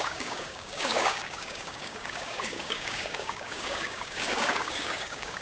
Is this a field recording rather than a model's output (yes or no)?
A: no